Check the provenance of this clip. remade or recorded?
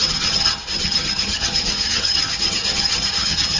remade